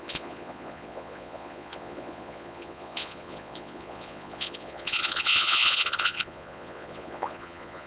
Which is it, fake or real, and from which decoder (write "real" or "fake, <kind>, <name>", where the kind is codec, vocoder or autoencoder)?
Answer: fake, vocoder, Vocos